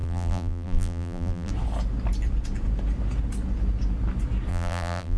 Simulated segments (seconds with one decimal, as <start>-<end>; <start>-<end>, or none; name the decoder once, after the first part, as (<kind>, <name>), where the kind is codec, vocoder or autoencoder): 0.0-1.5 (vocoder, BigVGAN v2); 4.5-5.2